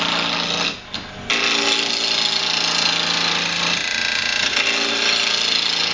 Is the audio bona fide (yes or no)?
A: yes